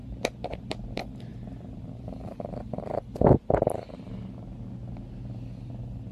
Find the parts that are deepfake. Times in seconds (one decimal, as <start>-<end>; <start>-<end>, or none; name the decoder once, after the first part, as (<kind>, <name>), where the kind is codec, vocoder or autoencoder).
none